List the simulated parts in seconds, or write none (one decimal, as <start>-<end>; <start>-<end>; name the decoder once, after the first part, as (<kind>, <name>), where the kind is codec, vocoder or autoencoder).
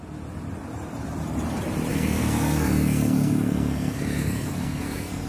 1.9-5.3 (codec, SNAC)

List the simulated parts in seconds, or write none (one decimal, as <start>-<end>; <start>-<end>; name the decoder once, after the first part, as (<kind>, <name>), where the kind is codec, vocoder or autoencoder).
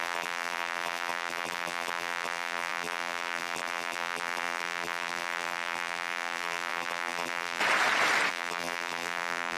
0.0-7.6 (vocoder, BigVGAN v2); 8.3-9.6